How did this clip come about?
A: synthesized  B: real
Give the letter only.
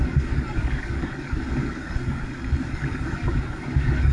A